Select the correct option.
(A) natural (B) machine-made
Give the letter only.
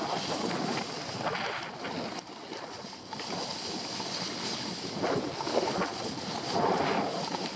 A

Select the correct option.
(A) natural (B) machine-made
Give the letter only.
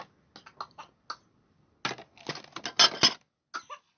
A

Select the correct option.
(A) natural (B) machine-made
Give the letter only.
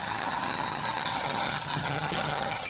B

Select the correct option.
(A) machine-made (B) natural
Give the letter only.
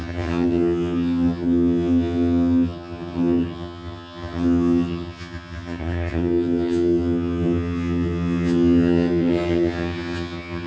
A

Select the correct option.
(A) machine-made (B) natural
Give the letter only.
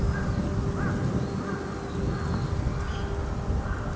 B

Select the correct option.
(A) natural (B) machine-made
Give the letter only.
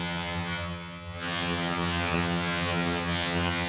B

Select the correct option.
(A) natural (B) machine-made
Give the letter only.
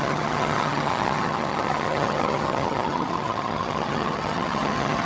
B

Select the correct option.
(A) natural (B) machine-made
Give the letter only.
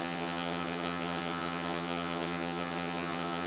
B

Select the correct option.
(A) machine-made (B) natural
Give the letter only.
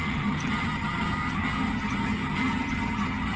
A